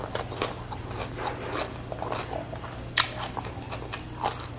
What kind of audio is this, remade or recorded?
recorded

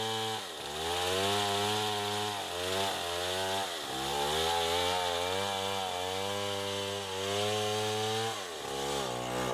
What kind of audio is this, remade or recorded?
recorded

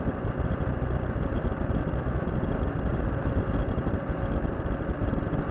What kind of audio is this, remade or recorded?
recorded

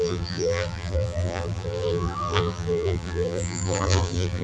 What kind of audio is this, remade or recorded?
remade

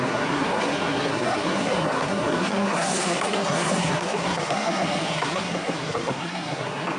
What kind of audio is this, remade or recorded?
remade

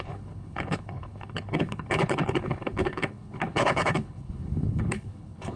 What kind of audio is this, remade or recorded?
remade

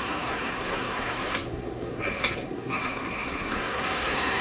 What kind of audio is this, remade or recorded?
remade